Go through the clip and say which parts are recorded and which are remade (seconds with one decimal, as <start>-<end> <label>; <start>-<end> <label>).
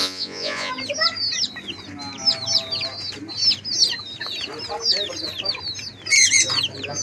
0.0-0.7 remade; 0.7-7.0 recorded